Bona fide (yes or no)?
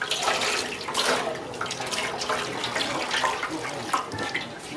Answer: yes